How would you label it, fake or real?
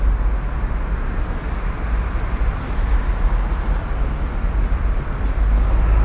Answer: real